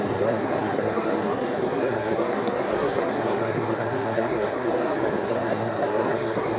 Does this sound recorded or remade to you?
remade